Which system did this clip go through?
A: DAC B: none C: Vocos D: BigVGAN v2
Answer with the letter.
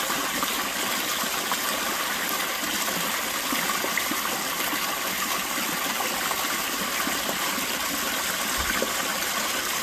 B